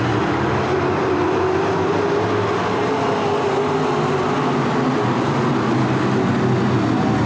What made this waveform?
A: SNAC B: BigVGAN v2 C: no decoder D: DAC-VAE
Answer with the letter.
C